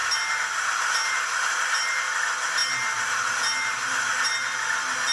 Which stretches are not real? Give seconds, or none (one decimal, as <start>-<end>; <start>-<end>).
none